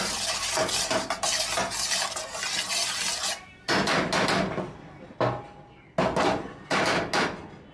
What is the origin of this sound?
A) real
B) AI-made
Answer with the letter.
A